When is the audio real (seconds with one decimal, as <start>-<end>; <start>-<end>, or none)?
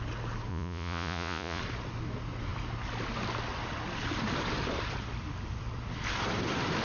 0.0-0.5; 1.6-6.8